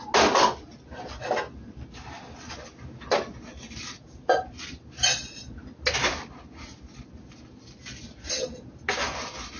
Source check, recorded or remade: recorded